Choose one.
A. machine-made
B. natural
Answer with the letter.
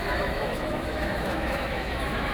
A